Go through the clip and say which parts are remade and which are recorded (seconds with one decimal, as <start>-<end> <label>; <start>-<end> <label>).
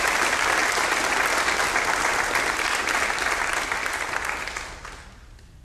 0.0-0.6 recorded; 0.6-1.6 remade; 1.6-3.8 recorded; 3.8-4.6 remade; 4.6-5.6 recorded